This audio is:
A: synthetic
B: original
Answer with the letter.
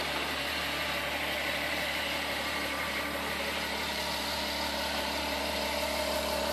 B